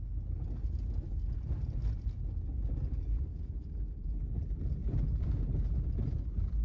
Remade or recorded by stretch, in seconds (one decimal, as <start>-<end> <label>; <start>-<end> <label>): 0.0-6.6 recorded